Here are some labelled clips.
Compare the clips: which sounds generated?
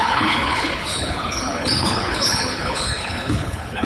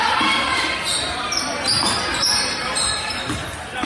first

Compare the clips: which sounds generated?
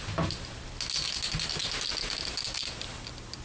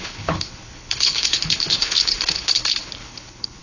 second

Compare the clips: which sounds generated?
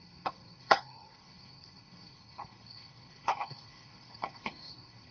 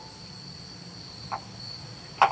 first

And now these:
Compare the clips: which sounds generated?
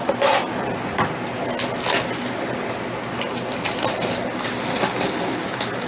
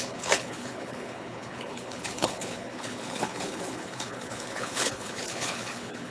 second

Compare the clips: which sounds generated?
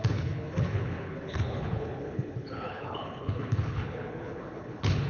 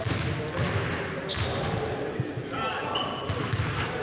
first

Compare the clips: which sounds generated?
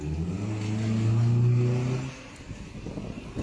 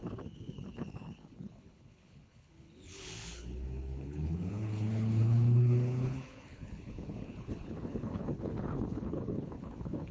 second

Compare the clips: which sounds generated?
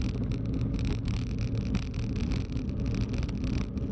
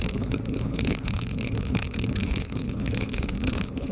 second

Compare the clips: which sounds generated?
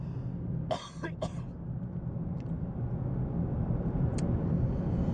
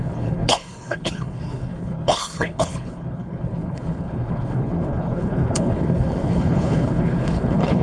second